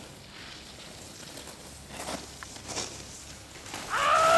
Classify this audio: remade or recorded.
recorded